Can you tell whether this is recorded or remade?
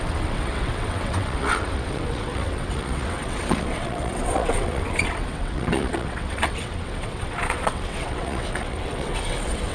remade